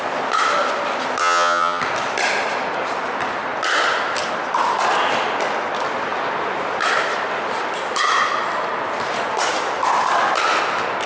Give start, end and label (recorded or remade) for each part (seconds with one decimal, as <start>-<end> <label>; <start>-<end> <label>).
0.0-1.2 recorded; 1.2-1.8 remade; 1.8-11.1 recorded